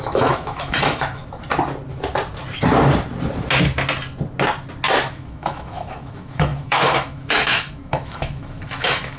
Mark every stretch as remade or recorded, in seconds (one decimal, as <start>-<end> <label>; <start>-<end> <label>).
0.0-1.2 remade; 1.2-5.1 recorded; 5.1-9.2 remade